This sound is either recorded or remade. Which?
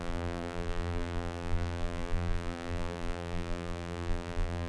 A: remade